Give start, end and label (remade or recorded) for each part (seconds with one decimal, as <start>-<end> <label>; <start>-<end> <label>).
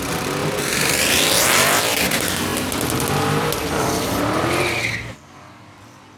0.0-0.4 recorded; 0.4-1.8 remade; 1.8-6.2 recorded